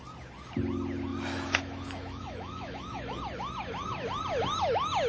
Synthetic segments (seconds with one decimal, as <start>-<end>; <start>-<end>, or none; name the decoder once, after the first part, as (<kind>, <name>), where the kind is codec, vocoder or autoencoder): 1.1-3.2 (autoencoder, DAC-VAE)